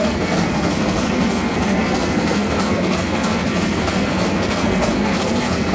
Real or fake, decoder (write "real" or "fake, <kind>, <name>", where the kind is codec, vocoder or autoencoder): fake, codec, SNAC